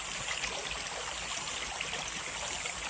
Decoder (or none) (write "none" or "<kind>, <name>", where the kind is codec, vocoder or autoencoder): none